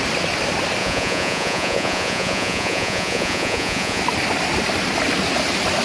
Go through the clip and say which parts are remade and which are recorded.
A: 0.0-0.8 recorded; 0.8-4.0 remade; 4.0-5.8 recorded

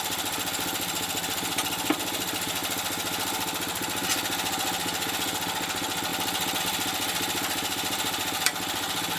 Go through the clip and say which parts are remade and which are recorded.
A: 0.0-9.2 recorded

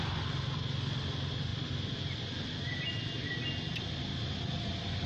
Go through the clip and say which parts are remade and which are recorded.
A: 0.0-5.1 recorded

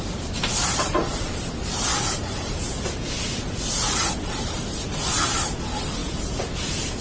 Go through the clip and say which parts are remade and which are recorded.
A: 0.0-1.9 recorded; 1.9-4.1 remade; 4.1-6.0 recorded; 6.0-7.0 remade

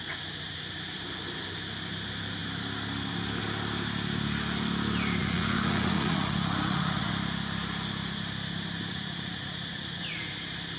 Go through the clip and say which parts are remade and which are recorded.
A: 0.0-5.2 recorded; 5.2-7.1 remade; 7.1-8.9 recorded; 8.9-10.2 remade; 10.2-10.8 recorded